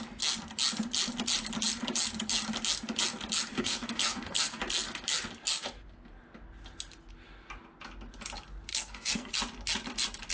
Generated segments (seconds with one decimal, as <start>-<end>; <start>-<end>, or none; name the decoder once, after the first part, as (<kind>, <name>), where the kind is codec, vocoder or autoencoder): 3.5-4.6 (codec, SNAC); 8.7-9.3